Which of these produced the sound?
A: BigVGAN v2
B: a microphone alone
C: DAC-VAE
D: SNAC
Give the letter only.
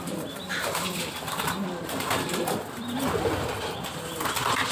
A